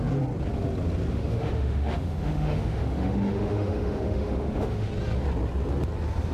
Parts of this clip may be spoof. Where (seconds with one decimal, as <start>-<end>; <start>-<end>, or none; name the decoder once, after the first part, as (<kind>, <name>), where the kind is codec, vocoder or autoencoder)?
1.1-4.9 (autoencoder, DAC-VAE)